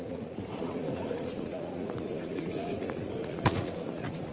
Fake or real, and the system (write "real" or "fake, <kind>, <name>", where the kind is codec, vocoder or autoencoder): fake, vocoder, Vocos